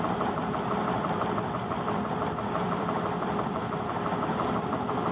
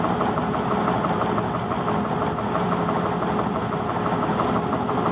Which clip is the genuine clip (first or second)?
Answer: second